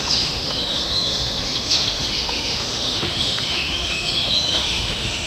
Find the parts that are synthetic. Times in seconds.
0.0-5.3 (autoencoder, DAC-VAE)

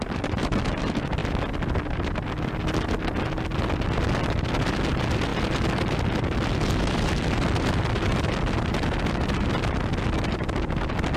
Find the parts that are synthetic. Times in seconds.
none

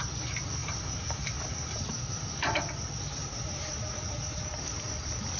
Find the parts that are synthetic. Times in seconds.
0.6-2.6 (vocoder, BigVGAN v2); 3.2-4.4

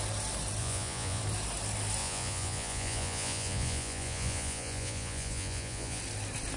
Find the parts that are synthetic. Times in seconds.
0.6-1.2 (vocoder, Vocos); 2.0-6.0

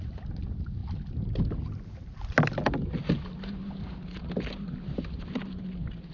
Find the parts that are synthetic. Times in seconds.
none

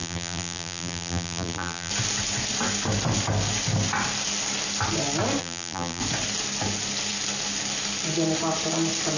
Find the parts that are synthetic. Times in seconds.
0.0-1.9 (vocoder, BigVGAN v2); 5.4-6.0

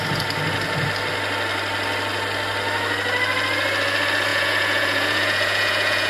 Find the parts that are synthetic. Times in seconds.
4.3-6.1 (vocoder, Vocos)

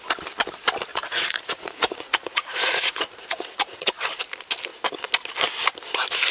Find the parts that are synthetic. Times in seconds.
0.9-4.0 (vocoder, Vocos)